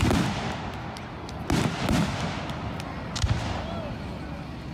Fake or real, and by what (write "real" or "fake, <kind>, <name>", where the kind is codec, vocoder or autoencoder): real